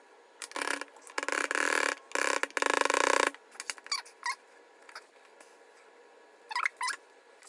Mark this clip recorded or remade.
recorded